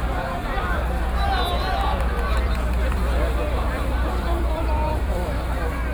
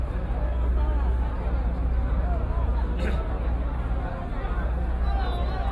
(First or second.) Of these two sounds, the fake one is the first